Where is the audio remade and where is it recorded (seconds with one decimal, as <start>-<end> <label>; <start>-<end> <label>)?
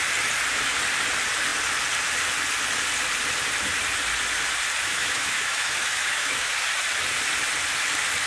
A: 0.0-4.8 recorded; 4.8-6.5 remade; 6.5-8.3 recorded